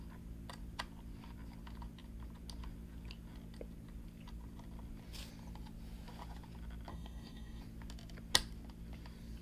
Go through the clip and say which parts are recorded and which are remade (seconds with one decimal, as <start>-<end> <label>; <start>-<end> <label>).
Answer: 0.0-6.9 recorded; 6.9-7.6 remade; 7.6-9.4 recorded